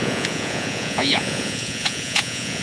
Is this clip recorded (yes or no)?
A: no